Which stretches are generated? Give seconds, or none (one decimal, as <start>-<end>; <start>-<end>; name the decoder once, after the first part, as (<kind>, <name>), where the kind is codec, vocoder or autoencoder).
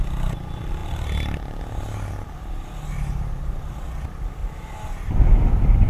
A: 0.8-1.6 (vocoder, BigVGAN v2); 4.4-5.5